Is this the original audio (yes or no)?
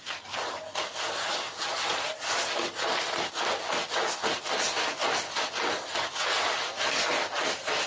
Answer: yes